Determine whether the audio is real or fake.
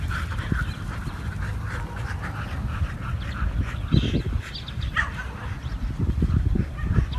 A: real